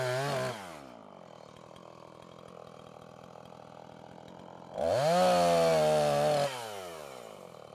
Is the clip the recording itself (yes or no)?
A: yes